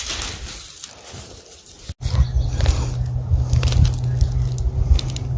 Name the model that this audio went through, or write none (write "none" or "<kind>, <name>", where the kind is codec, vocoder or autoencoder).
none